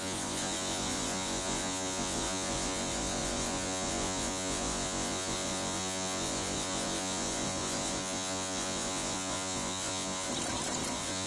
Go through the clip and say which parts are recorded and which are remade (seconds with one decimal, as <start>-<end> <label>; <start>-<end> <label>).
0.0-10.3 remade; 10.3-10.9 recorded; 10.9-11.3 remade